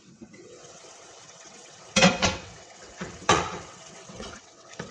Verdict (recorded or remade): remade